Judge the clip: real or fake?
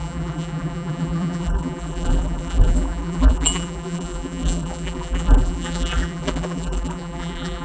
fake